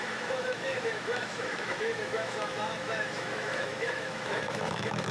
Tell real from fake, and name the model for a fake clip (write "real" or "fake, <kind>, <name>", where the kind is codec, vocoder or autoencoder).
fake, autoencoder, DAC-VAE